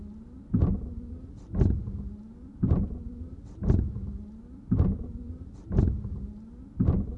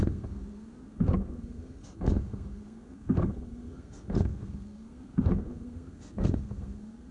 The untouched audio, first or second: first